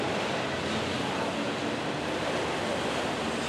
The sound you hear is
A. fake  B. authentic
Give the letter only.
B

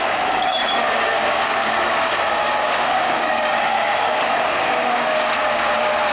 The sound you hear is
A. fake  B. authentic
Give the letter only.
A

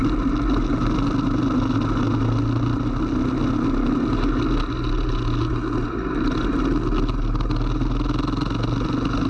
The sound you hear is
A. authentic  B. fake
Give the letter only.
A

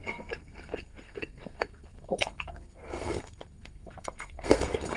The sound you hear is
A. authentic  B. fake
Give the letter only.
B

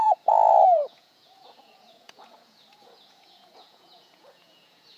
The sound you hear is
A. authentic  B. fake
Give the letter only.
B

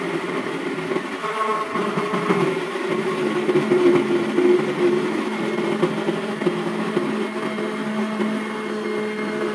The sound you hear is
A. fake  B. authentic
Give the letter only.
B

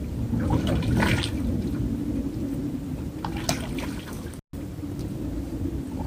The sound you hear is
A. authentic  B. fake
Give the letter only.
A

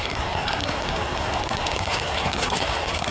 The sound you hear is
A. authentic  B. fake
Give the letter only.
B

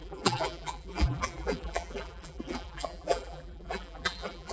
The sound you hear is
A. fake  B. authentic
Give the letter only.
A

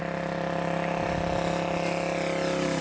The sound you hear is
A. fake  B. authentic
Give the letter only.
B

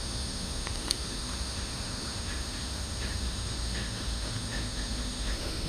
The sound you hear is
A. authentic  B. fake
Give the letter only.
B